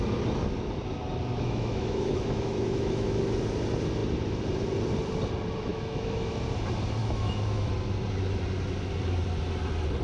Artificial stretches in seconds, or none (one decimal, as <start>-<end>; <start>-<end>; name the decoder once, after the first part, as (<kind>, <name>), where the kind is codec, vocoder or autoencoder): 1.3-3.2 (autoencoder, DAC-VAE); 5.7-6.4; 7.0-7.7